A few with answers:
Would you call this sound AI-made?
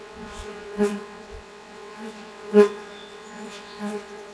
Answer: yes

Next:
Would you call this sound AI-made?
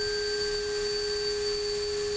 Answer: no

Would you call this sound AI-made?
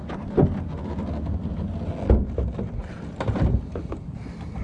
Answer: no